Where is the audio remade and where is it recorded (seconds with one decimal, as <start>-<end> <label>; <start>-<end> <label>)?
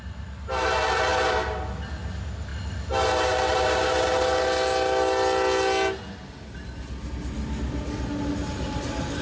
0.0-9.2 recorded